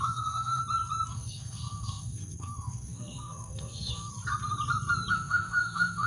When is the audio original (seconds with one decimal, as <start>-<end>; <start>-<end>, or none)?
0.6-1.1; 4.1-5.1